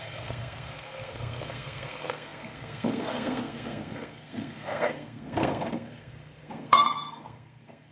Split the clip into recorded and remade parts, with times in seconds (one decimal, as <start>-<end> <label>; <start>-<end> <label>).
0.0-7.9 remade